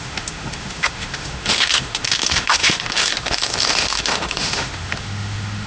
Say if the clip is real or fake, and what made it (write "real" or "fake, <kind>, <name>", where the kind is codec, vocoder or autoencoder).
fake, autoencoder, DAC-VAE